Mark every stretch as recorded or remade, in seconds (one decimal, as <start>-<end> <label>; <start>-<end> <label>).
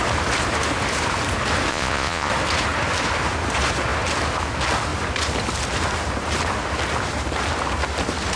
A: 0.0-1.7 recorded; 1.7-2.3 remade; 2.3-8.4 recorded